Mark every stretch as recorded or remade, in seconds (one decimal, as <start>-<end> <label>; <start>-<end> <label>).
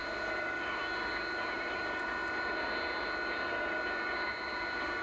0.0-5.0 recorded